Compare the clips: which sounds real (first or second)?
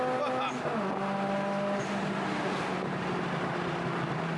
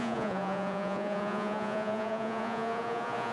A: first